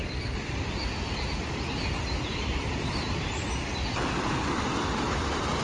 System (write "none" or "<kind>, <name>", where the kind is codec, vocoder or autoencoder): none